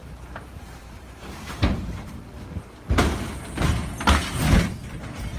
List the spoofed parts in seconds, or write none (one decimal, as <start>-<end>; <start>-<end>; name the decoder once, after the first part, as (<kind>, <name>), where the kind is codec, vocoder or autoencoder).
0.0-2.3 (vocoder, BigVGAN v2)